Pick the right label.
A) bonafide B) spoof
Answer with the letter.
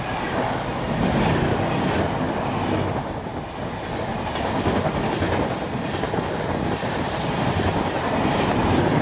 A